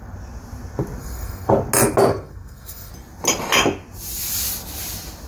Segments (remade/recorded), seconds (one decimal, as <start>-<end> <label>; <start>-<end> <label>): 0.0-1.0 recorded; 1.0-1.5 remade; 1.5-2.1 recorded; 2.1-2.9 remade; 2.9-5.3 recorded